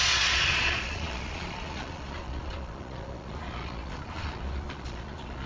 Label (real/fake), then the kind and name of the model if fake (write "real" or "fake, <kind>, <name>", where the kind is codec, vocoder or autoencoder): fake, vocoder, Vocos